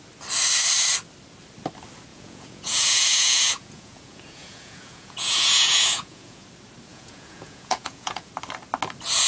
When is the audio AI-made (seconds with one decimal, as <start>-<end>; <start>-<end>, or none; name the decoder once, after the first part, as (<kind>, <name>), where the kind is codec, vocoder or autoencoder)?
2.1-6.4 (vocoder, Vocos); 6.9-8.3